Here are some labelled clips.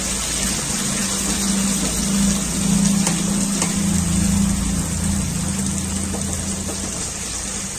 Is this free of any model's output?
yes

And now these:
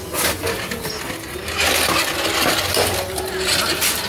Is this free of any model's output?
yes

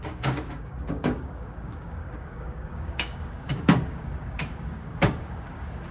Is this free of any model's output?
no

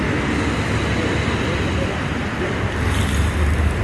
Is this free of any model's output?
yes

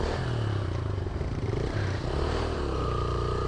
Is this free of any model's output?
no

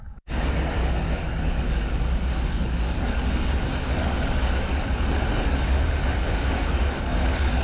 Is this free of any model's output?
no